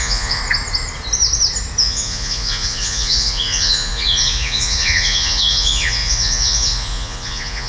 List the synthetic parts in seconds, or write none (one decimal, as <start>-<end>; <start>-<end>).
0.0-0.4; 1.8-7.7